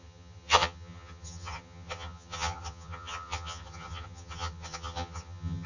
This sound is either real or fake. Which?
fake